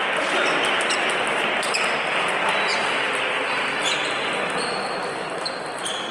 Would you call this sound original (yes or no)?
yes